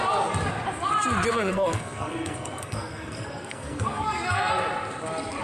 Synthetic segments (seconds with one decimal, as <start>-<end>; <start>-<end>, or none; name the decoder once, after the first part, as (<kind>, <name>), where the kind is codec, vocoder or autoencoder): 1.3-4.5 (codec, SNAC)